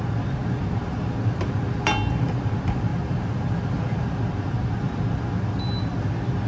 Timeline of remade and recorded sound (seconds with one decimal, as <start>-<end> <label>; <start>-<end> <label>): 0.0-0.4 recorded; 0.4-1.4 remade; 1.4-2.9 recorded; 2.9-3.4 remade; 3.4-6.5 recorded